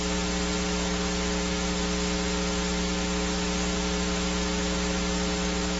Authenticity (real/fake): real